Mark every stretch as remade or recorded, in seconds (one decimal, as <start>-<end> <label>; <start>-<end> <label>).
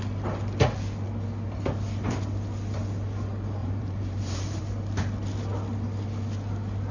0.0-3.6 recorded; 3.6-4.6 remade; 4.6-6.9 recorded